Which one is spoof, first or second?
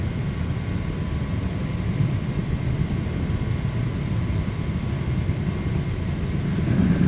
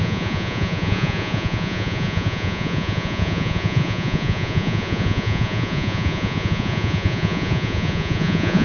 second